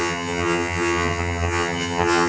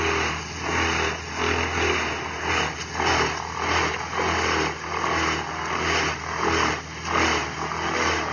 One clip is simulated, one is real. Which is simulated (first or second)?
first